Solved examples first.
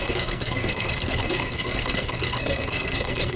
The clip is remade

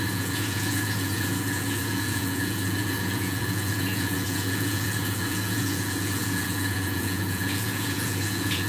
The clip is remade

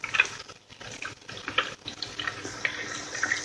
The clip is recorded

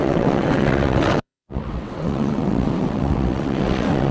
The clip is remade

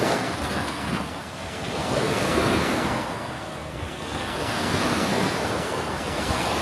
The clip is remade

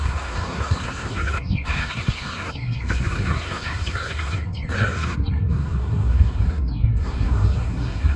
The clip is remade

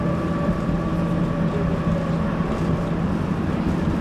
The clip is recorded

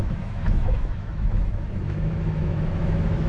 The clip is remade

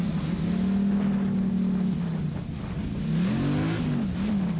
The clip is recorded